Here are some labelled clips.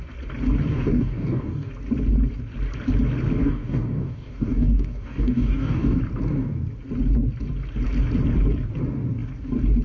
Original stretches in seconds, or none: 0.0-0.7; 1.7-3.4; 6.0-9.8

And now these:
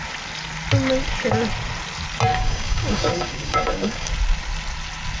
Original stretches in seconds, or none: 0.0-2.3; 4.1-5.2

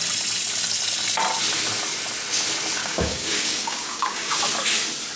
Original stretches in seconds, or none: 0.0-2.8; 4.4-5.2

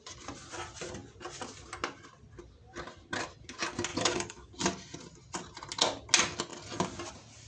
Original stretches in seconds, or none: 0.0-3.9; 4.5-7.5